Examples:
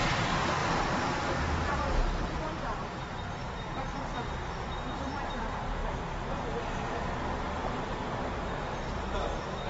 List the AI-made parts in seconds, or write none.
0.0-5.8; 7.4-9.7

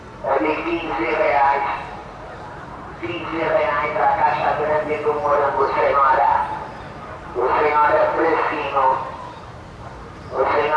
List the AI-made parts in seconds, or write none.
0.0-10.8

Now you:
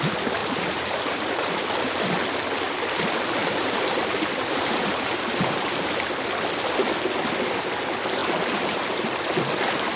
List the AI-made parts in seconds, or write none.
0.4-1.6; 3.4-6.2; 8.2-8.8

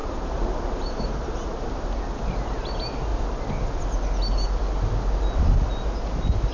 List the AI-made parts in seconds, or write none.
0.0-1.7

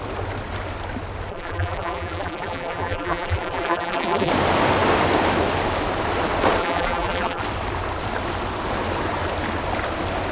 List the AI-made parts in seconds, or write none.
1.3-4.3; 6.6-7.4

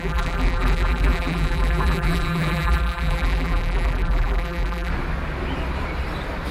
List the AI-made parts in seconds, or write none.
0.0-4.9